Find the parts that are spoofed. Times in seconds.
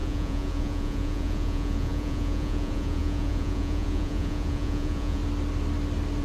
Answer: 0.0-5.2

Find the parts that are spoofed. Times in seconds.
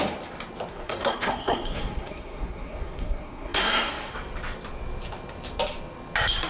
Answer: 0.7-4.1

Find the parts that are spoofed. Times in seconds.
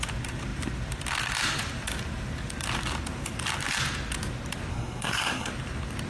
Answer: 4.7-5.5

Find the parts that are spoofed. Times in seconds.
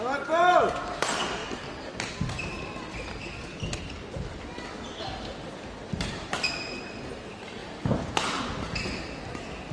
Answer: 1.4-2.1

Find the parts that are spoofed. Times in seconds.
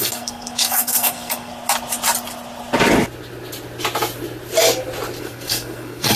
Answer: 0.0-1.5; 5.2-6.2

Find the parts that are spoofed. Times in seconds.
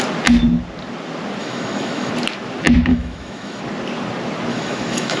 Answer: 1.4-2.1; 2.9-3.6; 4.5-5.2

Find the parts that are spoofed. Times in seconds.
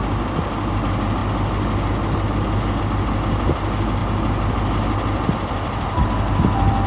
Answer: none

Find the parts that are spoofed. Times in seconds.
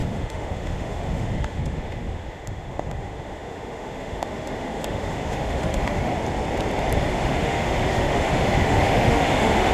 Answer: 0.0-6.1; 7.0-9.7